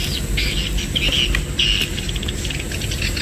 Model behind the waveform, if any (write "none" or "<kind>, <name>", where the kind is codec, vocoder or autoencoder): none